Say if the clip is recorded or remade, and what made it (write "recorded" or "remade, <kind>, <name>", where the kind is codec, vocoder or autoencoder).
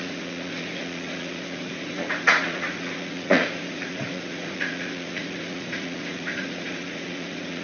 remade, vocoder, Vocos